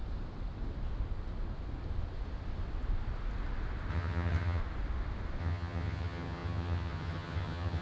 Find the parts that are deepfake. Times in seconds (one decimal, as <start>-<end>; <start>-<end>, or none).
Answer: 3.9-4.6; 5.4-7.8